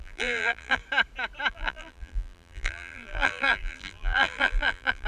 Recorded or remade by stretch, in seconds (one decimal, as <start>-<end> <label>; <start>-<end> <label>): 0.0-0.8 remade; 0.8-1.5 recorded; 1.5-5.1 remade